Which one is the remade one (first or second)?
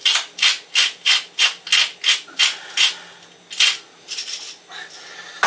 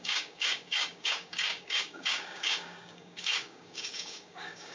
second